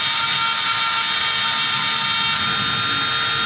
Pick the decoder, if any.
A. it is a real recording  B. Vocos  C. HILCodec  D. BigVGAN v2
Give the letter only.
A